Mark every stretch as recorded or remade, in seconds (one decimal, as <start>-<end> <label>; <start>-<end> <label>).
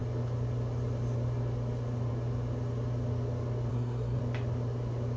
0.0-3.7 recorded; 3.7-4.2 remade; 4.2-5.2 recorded